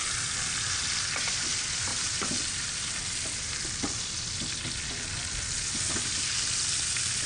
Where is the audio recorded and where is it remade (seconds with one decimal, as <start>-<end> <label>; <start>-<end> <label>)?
0.0-1.9 recorded; 1.9-2.9 remade; 2.9-7.3 recorded